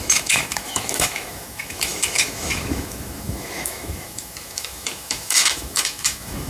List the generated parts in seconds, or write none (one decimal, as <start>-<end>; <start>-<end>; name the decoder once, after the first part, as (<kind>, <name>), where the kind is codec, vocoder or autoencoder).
0.0-6.5 (autoencoder, DAC-VAE)